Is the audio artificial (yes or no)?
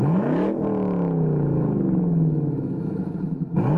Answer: yes